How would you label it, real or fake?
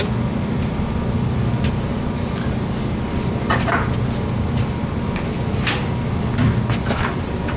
real